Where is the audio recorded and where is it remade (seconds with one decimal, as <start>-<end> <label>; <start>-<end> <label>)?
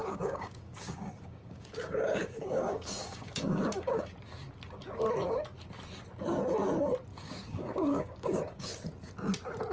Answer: 0.0-4.0 remade; 4.0-7.1 recorded; 7.1-8.7 remade; 8.7-9.7 recorded